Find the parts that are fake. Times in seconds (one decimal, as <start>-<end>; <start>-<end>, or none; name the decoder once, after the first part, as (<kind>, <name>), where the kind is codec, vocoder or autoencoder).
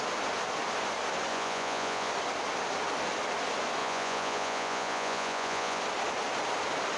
1.3-2.1 (vocoder, Vocos); 3.8-5.8